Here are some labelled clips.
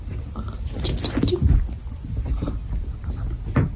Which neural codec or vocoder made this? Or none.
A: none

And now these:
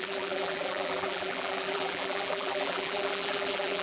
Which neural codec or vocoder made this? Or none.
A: vocoder, BigVGAN v2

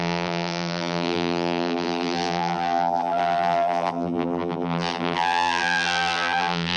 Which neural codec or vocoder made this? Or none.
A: vocoder, BigVGAN v2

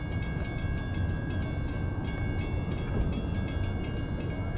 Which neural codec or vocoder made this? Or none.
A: none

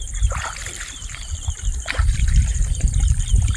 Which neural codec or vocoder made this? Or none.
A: vocoder, BigVGAN v2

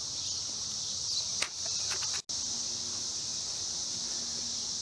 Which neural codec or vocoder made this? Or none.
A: none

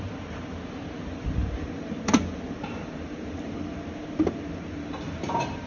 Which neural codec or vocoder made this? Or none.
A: vocoder, BigVGAN v2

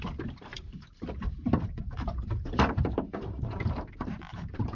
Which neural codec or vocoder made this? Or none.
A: vocoder, BigVGAN v2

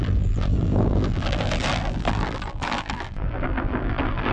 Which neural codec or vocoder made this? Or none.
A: vocoder, BigVGAN v2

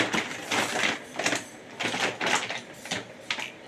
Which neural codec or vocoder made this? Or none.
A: none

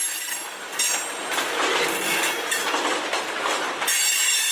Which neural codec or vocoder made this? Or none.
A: none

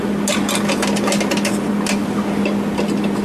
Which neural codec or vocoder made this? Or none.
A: none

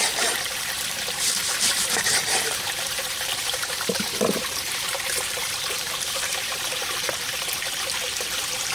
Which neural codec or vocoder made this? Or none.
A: vocoder, BigVGAN v2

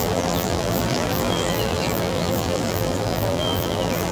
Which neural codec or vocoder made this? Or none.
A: vocoder, BigVGAN v2